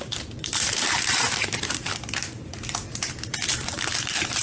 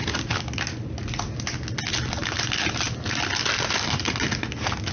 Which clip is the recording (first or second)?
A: second